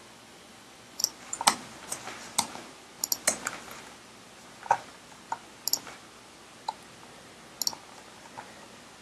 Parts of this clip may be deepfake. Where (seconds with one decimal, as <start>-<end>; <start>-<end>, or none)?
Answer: 0.0-1.0